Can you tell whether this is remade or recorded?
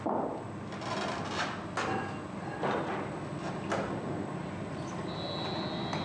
recorded